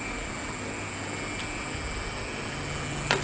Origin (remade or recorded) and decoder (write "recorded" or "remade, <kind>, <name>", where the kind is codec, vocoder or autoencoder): recorded